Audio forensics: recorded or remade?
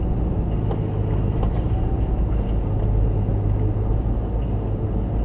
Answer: recorded